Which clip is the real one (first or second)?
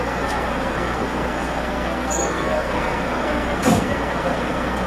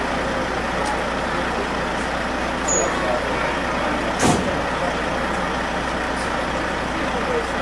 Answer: second